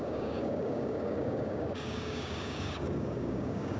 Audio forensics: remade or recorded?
remade